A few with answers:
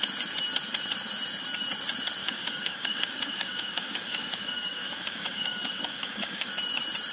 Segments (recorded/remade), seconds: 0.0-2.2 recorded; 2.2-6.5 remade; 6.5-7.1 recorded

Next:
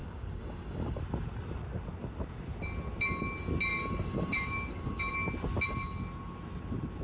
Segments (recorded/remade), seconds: 0.0-1.0 remade; 1.0-3.7 recorded; 3.7-5.1 remade; 5.1-7.0 recorded

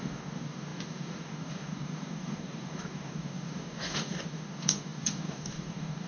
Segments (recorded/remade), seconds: 0.0-6.1 remade